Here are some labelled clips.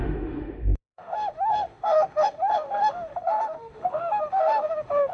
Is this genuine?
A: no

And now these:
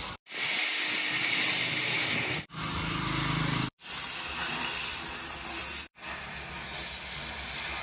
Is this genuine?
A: yes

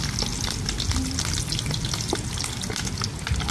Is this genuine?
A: yes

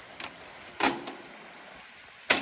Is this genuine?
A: yes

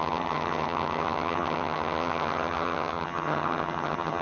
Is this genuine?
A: no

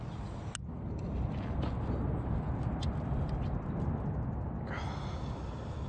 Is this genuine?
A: yes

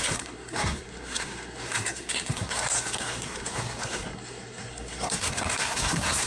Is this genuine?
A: no